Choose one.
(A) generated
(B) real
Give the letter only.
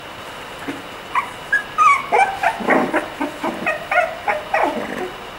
B